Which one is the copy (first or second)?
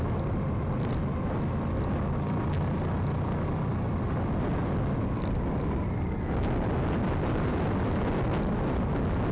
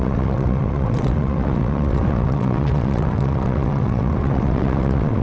second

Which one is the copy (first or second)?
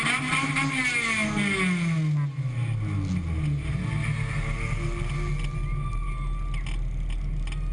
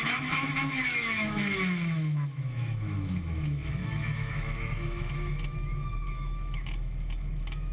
second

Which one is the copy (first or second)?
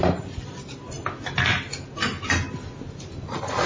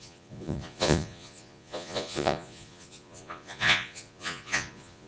second